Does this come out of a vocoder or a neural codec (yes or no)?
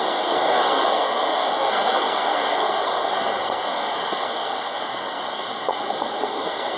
yes